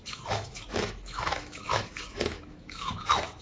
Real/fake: fake